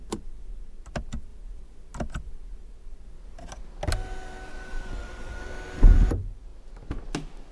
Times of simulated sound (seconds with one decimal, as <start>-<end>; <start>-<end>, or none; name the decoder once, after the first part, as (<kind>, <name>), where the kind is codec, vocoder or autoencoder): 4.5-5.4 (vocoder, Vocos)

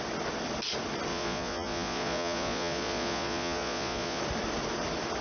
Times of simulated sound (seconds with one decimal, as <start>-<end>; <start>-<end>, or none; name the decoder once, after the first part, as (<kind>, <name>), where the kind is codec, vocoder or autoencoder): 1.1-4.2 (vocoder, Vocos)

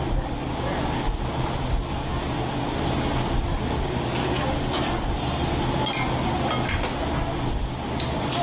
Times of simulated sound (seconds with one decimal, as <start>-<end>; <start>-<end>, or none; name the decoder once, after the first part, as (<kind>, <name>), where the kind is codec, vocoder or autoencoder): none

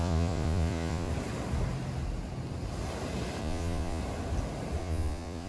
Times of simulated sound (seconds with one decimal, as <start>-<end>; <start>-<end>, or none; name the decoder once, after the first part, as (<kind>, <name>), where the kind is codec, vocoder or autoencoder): 0.0-1.1 (vocoder, Vocos); 3.4-4.0; 4.8-5.5

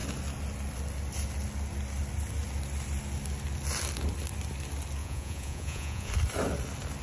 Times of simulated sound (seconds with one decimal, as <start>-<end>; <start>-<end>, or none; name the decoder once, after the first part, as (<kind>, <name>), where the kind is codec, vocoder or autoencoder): 5.0-6.1 (vocoder, Vocos)

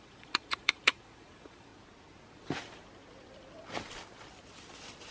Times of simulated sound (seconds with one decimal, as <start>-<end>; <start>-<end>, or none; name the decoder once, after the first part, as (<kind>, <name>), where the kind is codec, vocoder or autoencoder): 0.0-1.7 (vocoder, Vocos)

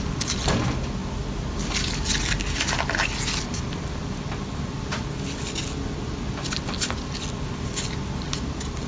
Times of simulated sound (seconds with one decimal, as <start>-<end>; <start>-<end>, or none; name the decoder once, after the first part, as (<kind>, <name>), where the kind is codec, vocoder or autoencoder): none

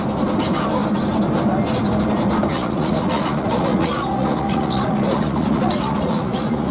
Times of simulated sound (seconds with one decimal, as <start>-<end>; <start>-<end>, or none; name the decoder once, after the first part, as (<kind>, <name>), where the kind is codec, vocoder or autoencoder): 2.5-6.7 (vocoder, Vocos)